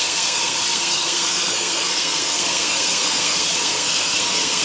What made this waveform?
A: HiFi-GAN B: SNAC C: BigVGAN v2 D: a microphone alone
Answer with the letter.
B